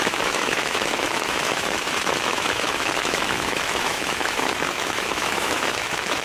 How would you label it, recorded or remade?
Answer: remade